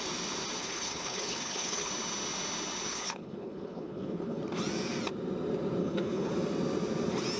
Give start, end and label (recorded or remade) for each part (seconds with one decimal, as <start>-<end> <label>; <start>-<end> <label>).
0.0-0.6 recorded; 0.6-1.9 remade; 1.9-2.9 recorded; 2.9-4.4 remade; 4.4-5.8 recorded; 5.8-6.3 remade; 6.3-7.4 recorded